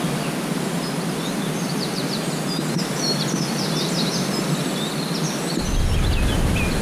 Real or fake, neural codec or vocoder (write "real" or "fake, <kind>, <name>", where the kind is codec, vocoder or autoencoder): real